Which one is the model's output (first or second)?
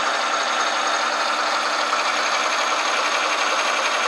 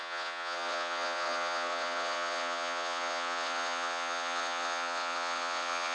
second